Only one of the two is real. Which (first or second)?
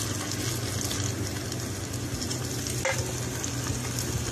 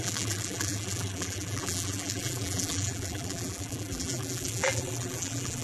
first